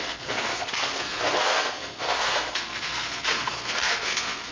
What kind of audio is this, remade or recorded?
remade